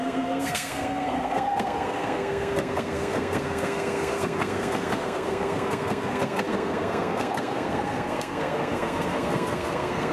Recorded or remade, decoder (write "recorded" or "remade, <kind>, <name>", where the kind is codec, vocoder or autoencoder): remade, codec, SNAC